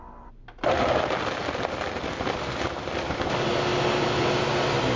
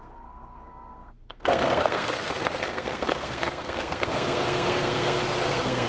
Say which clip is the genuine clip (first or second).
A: first